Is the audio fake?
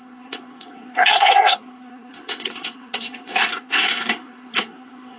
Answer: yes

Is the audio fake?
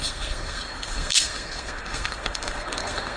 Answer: yes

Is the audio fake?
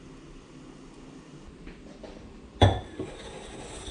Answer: no